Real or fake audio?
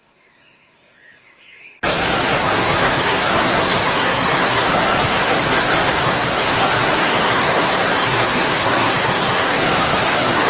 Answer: fake